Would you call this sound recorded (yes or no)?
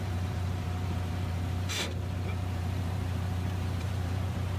no